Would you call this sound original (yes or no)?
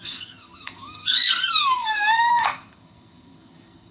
no